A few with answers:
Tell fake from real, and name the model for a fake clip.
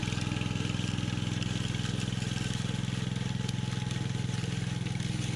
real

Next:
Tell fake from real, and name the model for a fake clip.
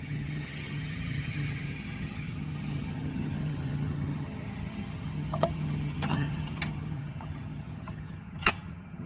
fake, vocoder, HiFi-GAN